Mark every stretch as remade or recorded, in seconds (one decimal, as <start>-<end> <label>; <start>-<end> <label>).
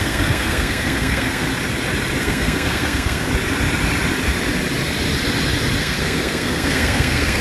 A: 0.0-1.5 remade; 1.5-2.2 recorded; 2.2-3.3 remade; 3.3-5.8 recorded; 5.8-7.4 remade